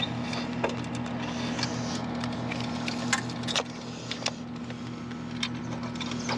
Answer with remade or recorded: recorded